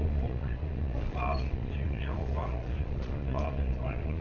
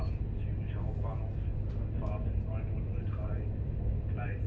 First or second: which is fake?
first